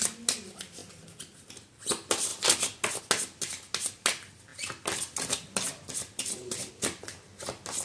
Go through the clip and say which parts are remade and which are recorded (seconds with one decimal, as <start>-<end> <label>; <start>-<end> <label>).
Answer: 0.0-7.8 recorded